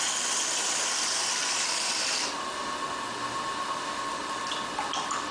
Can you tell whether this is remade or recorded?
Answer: recorded